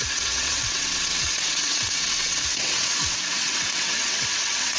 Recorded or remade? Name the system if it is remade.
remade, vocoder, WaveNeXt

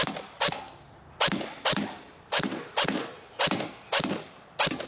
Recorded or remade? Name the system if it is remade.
recorded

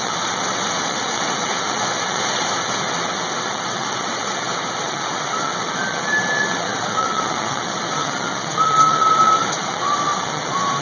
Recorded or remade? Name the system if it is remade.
remade, vocoder, WaveNeXt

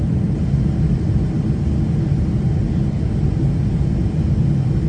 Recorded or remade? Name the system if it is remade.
recorded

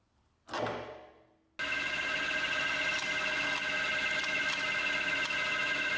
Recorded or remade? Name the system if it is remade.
recorded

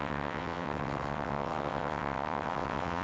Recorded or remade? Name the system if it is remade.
remade, vocoder, WaveNeXt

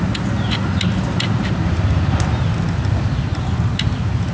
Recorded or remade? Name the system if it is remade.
recorded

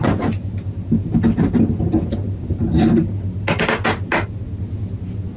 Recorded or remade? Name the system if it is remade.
recorded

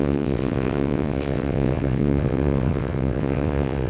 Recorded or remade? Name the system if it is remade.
remade, vocoder, WaveNeXt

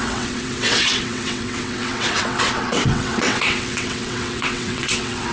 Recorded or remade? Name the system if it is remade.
remade, vocoder, WaveNeXt